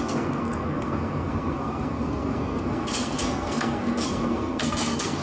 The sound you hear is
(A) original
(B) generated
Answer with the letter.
B